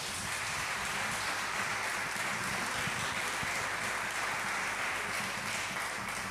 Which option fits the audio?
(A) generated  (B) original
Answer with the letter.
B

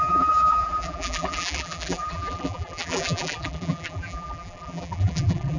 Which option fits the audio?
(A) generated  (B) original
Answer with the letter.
A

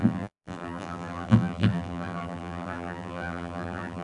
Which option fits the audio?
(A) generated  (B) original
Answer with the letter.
A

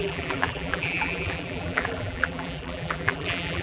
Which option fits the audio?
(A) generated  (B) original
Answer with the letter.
A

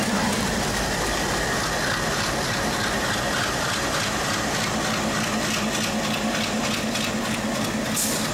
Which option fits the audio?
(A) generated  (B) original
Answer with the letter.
B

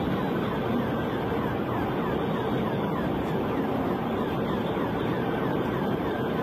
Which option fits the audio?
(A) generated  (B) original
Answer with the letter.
A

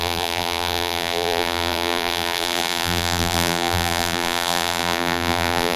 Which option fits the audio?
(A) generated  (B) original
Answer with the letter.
A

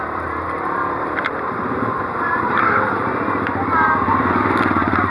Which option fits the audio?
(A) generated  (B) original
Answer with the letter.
A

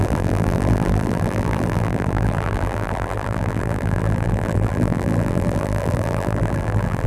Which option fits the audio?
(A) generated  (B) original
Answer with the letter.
A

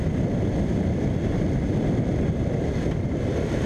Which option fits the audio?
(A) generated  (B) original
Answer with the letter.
B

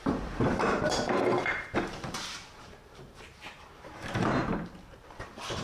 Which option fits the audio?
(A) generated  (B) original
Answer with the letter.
A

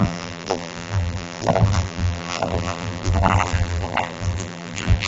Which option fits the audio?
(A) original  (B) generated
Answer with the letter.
B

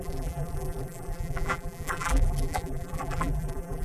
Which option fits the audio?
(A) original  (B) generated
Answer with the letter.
B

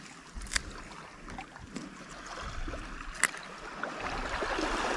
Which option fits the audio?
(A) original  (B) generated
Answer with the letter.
A